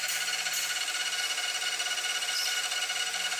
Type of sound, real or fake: real